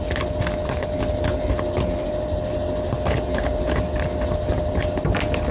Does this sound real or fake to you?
real